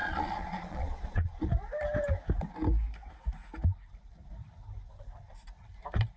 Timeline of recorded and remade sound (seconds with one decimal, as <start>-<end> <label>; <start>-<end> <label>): 0.0-1.5 remade; 1.5-6.2 recorded